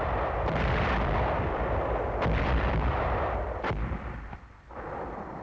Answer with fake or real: fake